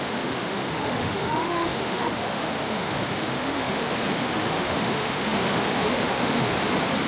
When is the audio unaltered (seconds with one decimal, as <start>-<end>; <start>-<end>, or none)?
6.5-7.1